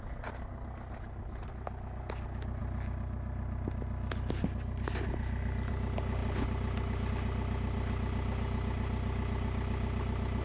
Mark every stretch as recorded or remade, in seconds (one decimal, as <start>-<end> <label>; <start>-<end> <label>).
0.0-10.4 recorded